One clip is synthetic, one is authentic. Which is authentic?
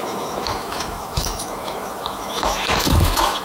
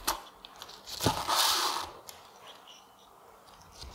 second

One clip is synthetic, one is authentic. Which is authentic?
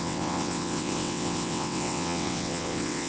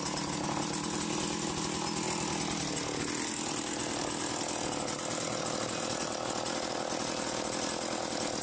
second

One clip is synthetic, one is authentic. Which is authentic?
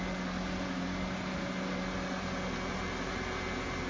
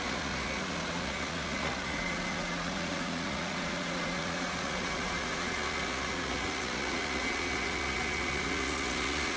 first